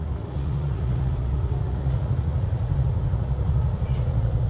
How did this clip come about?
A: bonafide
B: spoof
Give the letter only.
B